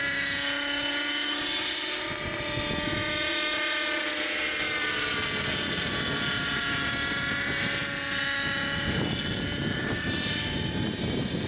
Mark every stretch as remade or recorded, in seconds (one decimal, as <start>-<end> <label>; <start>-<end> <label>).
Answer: 0.0-11.5 recorded